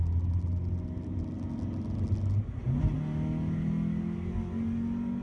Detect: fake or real real